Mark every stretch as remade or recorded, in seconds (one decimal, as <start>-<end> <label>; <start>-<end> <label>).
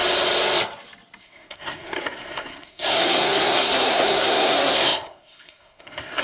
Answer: 0.0-1.2 recorded; 1.2-6.2 remade